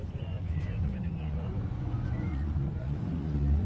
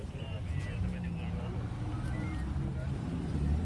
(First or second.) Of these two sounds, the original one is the second